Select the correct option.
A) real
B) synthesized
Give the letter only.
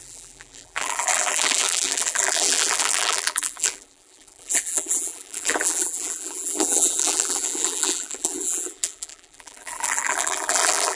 B